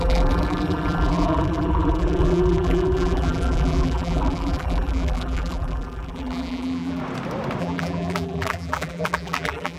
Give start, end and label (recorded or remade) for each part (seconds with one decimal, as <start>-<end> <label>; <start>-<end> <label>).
0.0-7.0 remade; 7.0-7.6 recorded; 7.6-9.8 remade